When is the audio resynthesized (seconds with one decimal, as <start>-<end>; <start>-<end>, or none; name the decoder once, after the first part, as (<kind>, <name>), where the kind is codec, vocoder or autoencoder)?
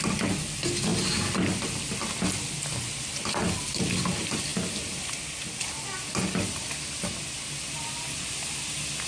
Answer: none